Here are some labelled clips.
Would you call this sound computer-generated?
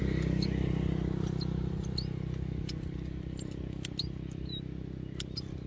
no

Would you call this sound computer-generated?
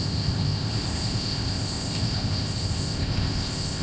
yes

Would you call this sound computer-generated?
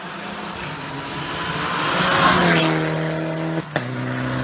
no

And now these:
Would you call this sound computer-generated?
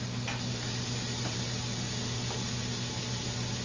no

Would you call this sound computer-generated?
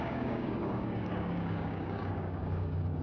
yes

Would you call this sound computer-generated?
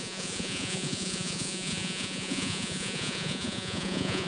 yes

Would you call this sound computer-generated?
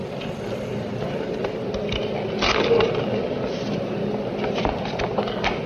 no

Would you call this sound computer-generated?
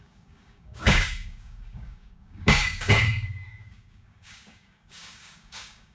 yes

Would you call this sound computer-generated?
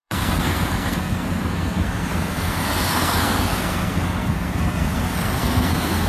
yes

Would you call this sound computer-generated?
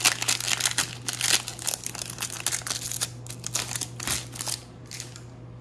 no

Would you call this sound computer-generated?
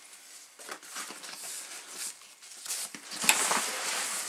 no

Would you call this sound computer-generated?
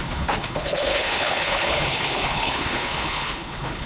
yes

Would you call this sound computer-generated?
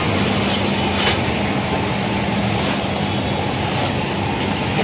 no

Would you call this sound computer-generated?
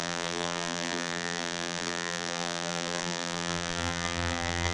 yes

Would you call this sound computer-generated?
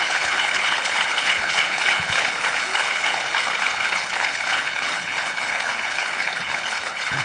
yes